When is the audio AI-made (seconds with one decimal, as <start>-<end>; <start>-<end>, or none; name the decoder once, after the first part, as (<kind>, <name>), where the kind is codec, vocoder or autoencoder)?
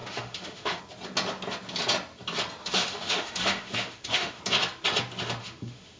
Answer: 0.0-0.8 (autoencoder, DAC-VAE); 2.6-4.4; 5.4-6.0